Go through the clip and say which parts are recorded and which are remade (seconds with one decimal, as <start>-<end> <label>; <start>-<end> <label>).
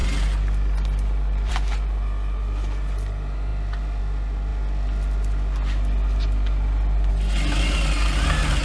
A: 0.0-8.6 recorded